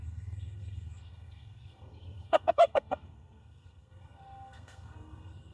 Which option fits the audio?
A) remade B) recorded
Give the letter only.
A